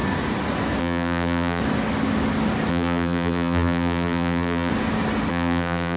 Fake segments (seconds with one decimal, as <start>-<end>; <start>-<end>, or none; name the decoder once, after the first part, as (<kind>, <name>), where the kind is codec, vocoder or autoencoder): 0.8-1.6 (vocoder, BigVGAN v2); 2.7-4.7; 5.3-6.0